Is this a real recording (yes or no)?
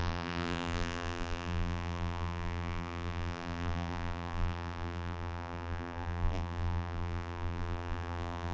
no